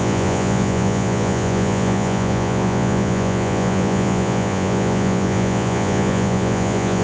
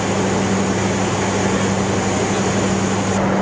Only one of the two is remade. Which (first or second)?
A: first